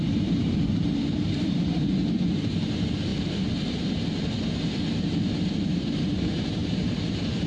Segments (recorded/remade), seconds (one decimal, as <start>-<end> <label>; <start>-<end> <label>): 0.0-3.1 remade; 3.1-5.0 recorded; 5.0-7.5 remade